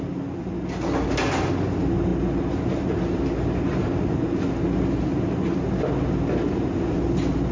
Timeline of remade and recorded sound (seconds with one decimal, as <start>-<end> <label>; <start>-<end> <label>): 0.0-7.5 recorded